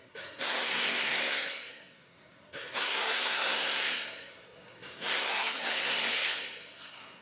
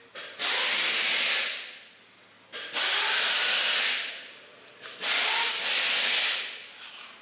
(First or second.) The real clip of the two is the second